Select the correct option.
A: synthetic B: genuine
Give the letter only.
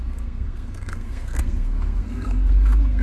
A